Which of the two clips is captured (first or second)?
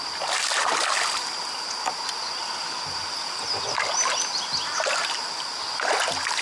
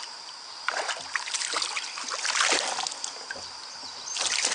first